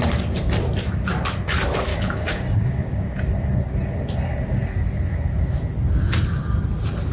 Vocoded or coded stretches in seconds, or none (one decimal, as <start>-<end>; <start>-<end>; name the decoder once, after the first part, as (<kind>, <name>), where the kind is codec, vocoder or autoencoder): 1.9-3.1 (codec, DAC)